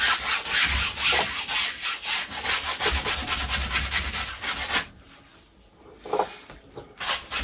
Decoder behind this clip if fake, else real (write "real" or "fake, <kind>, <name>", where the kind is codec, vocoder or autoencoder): real